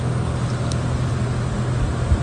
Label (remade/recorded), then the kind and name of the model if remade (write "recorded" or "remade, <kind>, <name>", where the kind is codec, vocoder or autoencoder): recorded